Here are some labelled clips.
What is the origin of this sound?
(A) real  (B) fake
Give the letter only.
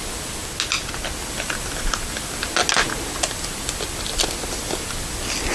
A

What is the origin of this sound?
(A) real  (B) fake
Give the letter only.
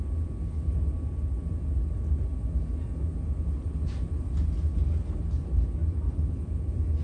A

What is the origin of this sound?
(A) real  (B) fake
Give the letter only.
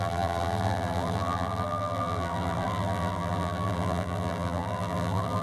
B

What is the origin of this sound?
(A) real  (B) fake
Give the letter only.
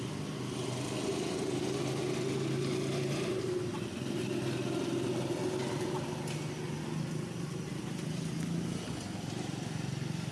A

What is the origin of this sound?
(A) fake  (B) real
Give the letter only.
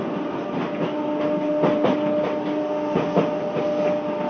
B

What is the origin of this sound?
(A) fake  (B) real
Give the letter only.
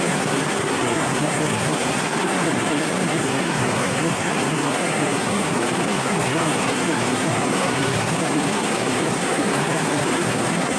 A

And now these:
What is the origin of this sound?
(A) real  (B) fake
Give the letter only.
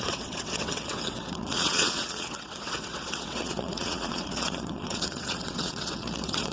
B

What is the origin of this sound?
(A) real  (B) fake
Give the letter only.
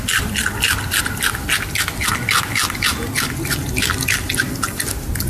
A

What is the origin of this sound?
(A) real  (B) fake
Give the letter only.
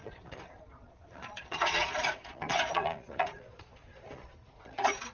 B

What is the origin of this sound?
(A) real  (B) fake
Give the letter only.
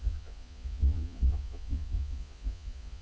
B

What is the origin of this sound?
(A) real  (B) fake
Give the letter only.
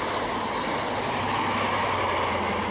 A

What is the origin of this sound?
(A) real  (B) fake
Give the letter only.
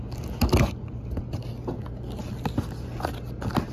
A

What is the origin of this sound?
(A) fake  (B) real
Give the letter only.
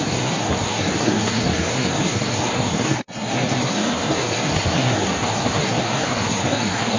A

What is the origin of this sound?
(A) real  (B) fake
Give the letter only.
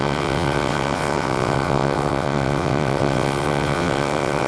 B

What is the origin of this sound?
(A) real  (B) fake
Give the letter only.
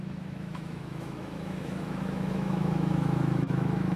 B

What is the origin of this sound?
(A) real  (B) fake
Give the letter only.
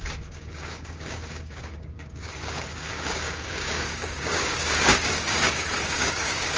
B